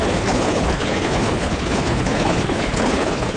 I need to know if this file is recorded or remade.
remade